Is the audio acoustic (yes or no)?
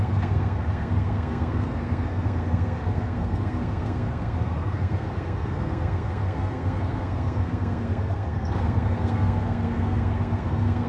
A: no